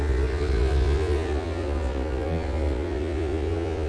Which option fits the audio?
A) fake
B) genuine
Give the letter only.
A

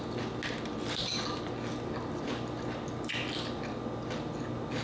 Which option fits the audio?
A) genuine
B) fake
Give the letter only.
A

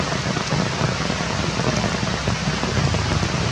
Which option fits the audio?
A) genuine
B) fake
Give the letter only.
A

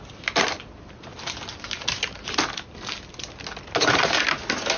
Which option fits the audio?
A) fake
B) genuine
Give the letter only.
B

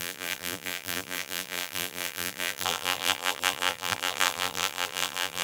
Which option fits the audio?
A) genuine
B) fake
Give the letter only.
B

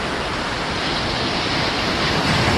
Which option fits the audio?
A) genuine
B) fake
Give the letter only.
A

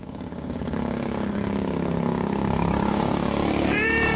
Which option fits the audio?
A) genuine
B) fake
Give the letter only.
B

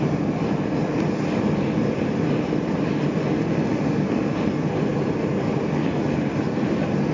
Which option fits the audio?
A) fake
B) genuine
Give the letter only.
B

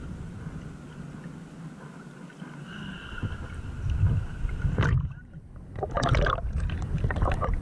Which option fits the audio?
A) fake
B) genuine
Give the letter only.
B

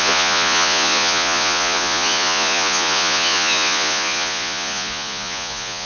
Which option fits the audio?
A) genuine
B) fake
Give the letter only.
B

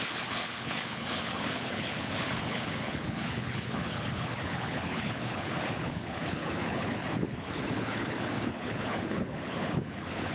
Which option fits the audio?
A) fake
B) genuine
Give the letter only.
A